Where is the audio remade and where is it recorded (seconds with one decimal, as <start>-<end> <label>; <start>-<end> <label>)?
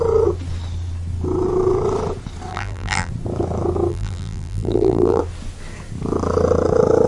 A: 0.0-2.5 recorded; 2.5-3.1 remade; 3.1-3.9 recorded; 3.9-5.2 remade; 5.2-7.1 recorded